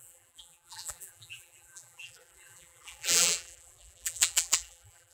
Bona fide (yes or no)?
no